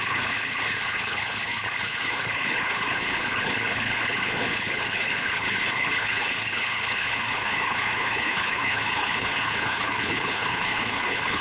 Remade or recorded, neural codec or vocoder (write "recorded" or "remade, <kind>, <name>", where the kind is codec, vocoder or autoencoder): remade, codec, HILCodec